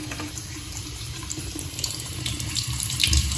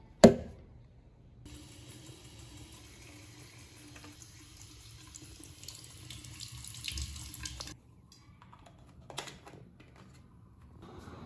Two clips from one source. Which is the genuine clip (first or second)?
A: second